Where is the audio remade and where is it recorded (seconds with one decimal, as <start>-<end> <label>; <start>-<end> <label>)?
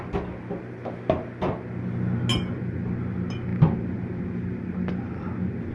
0.0-5.7 recorded